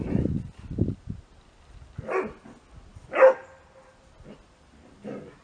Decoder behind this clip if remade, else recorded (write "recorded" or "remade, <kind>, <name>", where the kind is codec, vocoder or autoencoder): recorded